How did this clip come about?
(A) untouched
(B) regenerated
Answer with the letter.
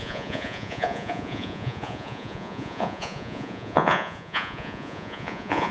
B